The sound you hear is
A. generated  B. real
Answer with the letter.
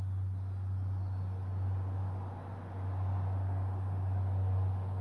B